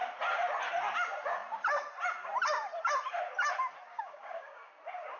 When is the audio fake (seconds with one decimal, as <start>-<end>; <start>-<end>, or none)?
3.9-4.7